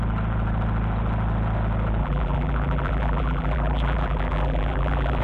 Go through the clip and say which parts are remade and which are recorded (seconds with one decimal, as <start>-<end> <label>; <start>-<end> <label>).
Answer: 0.0-2.0 recorded; 2.0-5.2 remade